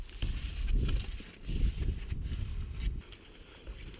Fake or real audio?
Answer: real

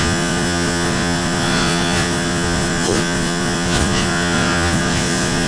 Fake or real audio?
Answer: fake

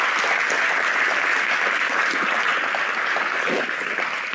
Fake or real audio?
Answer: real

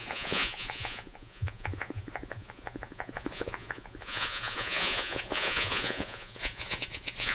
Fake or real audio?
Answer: fake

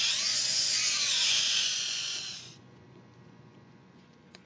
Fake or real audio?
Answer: fake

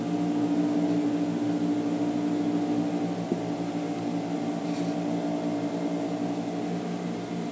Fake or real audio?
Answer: real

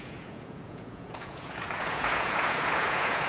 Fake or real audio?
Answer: fake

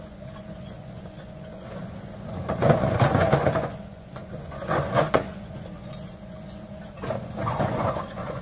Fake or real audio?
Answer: fake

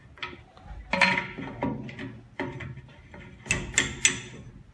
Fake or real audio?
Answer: real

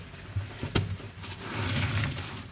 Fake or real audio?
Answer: real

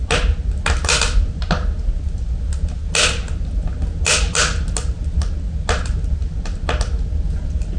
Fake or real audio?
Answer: real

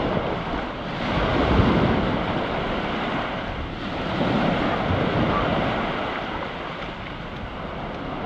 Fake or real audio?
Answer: real